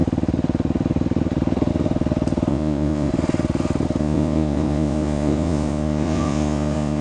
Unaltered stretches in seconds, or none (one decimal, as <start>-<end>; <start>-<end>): 0.0-2.5; 3.1-4.0